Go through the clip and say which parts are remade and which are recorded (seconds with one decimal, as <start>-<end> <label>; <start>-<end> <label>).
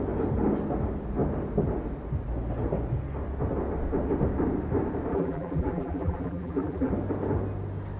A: 0.0-5.1 recorded; 5.1-6.9 remade; 6.9-8.0 recorded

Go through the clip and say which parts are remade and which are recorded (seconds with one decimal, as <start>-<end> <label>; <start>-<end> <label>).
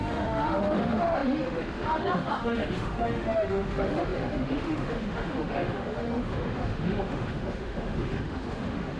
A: 0.0-9.0 remade